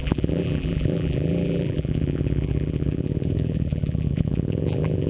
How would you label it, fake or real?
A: fake